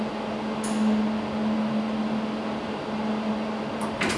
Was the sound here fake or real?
real